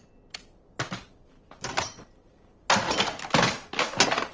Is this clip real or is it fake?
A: real